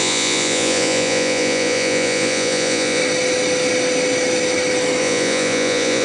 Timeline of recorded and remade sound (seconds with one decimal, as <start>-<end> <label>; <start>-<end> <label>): 0.0-3.0 remade; 3.0-5.0 recorded; 5.0-6.0 remade